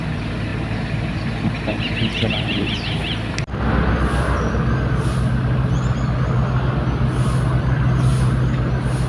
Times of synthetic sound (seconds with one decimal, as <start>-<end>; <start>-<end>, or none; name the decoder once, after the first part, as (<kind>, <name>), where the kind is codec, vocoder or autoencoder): 0.0-0.5 (vocoder, BigVGAN v2); 2.2-3.0; 7.6-8.1